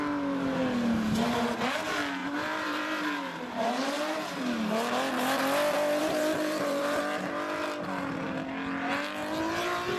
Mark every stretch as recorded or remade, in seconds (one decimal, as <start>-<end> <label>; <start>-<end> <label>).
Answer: 0.0-2.2 recorded; 2.2-3.7 remade; 3.7-6.0 recorded; 6.0-7.0 remade; 7.0-10.0 recorded